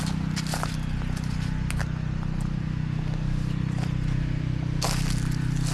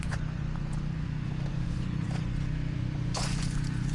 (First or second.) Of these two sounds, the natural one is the first